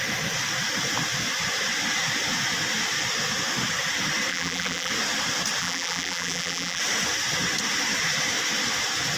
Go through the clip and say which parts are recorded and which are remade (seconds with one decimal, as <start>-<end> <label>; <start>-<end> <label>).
0.0-4.3 recorded; 4.3-4.9 remade; 4.9-5.6 recorded; 5.6-6.8 remade; 6.8-9.2 recorded